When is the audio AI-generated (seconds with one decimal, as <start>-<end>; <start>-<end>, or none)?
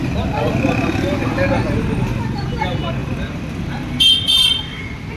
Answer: 3.0-4.8